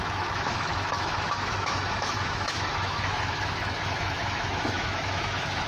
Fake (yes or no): yes